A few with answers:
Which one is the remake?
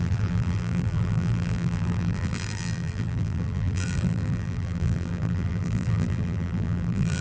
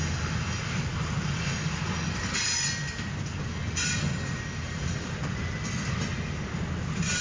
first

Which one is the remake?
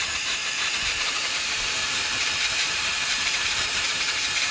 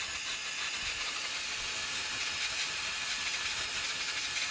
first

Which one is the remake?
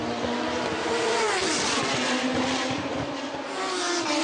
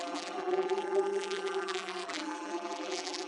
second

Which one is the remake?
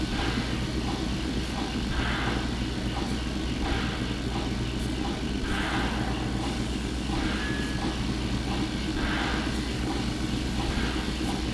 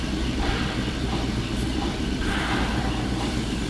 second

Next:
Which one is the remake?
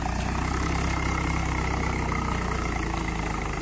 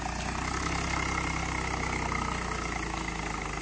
first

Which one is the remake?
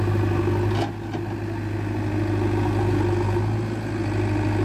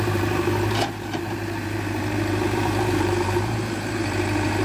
second